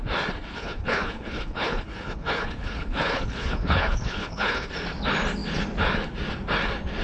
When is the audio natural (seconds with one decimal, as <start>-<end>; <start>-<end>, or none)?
0.0-0.5; 4.7-7.0